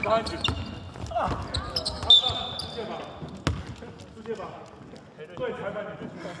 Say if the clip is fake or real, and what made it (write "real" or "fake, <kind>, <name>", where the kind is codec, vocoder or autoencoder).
real